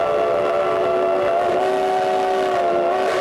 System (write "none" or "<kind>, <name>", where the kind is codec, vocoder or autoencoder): none